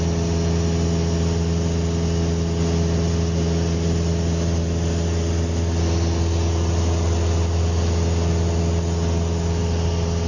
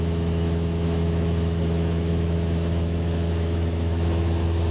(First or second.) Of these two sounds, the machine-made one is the second